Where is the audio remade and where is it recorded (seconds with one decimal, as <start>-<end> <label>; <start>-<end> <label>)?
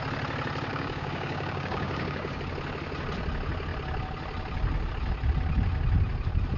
0.0-0.7 recorded; 0.7-2.4 remade; 2.4-6.6 recorded